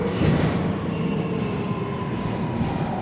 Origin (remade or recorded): recorded